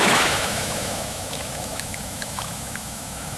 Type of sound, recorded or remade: remade